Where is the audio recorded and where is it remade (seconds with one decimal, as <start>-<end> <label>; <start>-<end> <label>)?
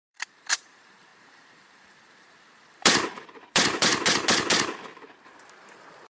0.0-3.9 remade; 3.9-5.0 recorded; 5.0-6.2 remade